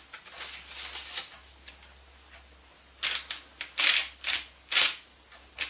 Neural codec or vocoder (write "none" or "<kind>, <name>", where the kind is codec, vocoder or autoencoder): none